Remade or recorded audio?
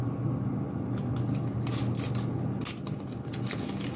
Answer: recorded